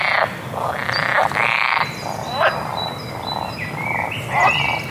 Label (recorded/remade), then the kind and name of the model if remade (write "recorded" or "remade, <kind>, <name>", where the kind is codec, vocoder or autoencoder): recorded